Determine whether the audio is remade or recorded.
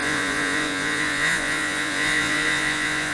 remade